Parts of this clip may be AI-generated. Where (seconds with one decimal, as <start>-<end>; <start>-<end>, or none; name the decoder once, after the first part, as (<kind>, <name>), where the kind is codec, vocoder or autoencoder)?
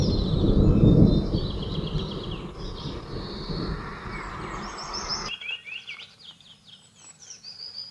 none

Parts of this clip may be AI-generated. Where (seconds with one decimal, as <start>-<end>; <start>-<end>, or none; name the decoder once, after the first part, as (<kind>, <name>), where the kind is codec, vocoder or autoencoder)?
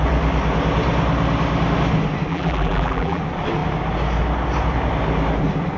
2.3-3.2 (vocoder, BigVGAN v2)